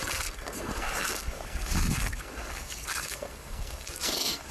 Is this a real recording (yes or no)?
no